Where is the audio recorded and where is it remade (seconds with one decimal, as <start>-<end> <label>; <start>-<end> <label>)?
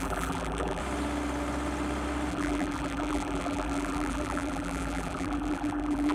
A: 0.0-0.8 remade; 0.8-2.3 recorded; 2.3-6.1 remade